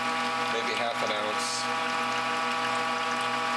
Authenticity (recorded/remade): recorded